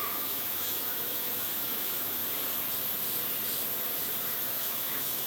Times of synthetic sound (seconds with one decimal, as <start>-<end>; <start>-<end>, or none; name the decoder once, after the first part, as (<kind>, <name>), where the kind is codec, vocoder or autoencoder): 0.0-2.2 (autoencoder, DAC-VAE); 4.5-5.3